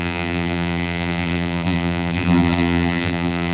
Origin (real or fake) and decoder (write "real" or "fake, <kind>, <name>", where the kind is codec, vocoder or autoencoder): fake, vocoder, BigVGAN v2